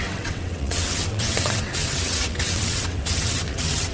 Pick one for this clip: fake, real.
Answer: fake